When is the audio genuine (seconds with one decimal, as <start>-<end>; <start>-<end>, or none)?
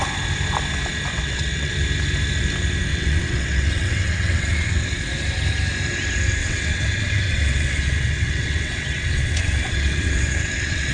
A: 0.0-1.1; 1.7-2.9; 4.9-6.4